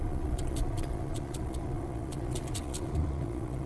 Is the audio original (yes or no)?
no